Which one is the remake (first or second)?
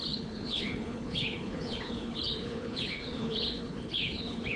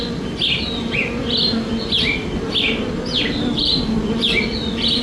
first